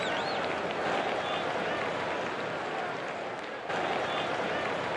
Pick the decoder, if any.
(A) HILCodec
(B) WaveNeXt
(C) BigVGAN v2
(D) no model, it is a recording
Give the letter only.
D